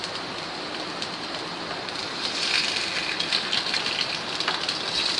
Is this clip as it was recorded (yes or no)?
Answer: yes